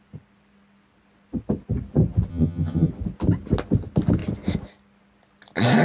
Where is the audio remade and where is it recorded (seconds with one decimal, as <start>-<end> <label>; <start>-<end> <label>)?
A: 0.0-2.3 recorded; 2.3-2.9 remade; 2.9-5.8 recorded